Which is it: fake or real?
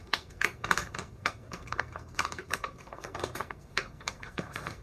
fake